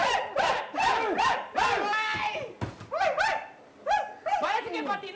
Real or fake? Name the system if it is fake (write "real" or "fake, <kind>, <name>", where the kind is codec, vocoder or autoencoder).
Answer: real